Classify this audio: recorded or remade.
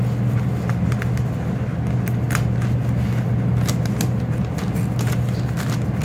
recorded